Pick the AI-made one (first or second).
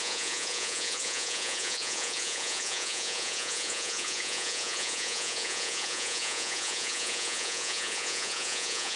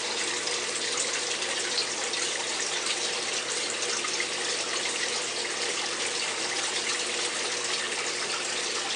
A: first